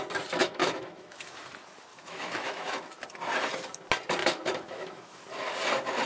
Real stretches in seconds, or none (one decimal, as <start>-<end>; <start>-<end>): 0.0-0.4; 1.5-1.9; 3.0-4.2; 5.2-6.1